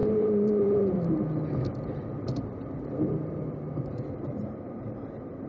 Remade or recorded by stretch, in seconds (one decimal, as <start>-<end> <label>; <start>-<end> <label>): 0.0-1.0 remade; 1.0-1.7 recorded; 1.7-5.0 remade; 5.0-5.5 recorded